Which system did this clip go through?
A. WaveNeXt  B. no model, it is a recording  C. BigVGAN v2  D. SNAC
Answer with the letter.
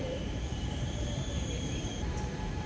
C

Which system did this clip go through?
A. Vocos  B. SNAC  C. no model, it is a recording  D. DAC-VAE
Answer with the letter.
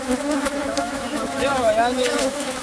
D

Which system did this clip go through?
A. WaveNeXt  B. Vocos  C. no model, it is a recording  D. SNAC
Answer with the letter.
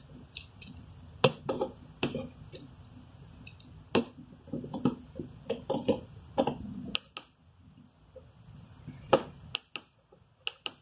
C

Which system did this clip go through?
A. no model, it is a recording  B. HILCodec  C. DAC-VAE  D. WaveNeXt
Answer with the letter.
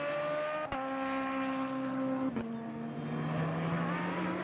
A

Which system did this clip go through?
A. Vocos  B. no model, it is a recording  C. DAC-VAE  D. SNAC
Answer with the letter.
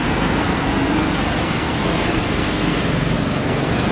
D